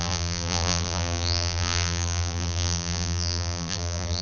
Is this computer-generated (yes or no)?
yes